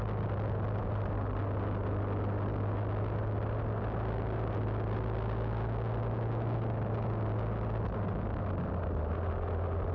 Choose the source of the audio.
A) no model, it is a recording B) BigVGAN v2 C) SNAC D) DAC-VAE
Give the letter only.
A